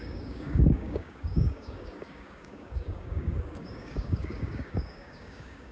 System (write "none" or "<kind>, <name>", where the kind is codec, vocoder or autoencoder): codec, DAC